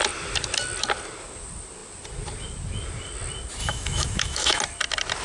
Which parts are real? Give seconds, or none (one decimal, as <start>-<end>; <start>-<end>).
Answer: 0.0-3.6; 4.6-5.2